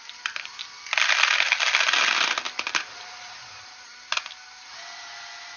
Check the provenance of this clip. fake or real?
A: real